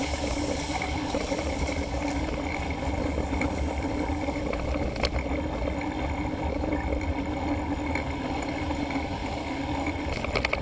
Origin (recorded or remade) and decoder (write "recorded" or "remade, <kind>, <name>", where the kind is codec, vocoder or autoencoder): recorded